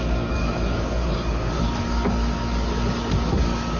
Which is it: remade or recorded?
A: remade